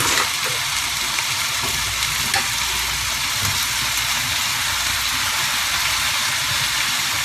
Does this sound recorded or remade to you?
recorded